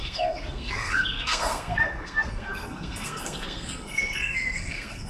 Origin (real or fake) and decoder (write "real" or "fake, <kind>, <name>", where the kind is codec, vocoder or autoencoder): fake, codec, SNAC